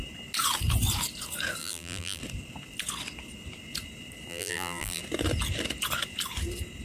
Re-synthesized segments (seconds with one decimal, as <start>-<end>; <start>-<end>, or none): 1.6-2.2; 4.3-5.0